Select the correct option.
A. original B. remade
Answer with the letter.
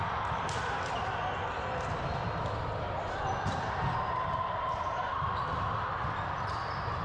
A